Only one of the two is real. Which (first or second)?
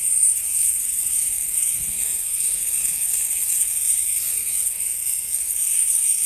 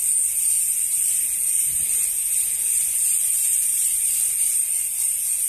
second